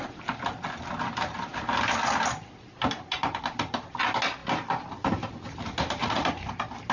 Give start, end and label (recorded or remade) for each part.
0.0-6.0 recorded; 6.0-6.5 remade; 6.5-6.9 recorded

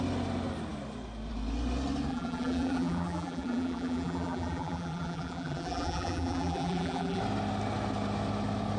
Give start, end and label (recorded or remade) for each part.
0.0-2.1 recorded; 2.1-7.2 remade; 7.2-8.8 recorded

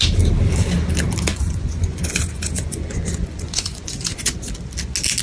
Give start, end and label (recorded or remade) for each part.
0.0-1.3 recorded; 1.3-4.4 remade; 4.4-5.2 recorded

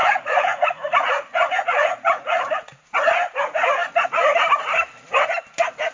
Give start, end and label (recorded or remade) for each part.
0.0-2.8 remade; 2.8-5.9 recorded